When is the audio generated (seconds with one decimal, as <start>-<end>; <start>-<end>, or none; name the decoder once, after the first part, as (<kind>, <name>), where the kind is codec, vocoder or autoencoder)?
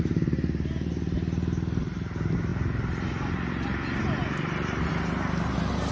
none